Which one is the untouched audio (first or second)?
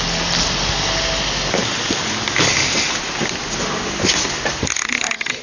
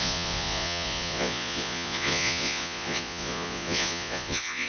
first